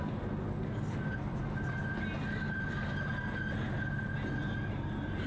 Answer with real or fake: real